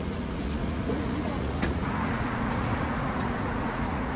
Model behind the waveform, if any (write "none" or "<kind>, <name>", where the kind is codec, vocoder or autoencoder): vocoder, Vocos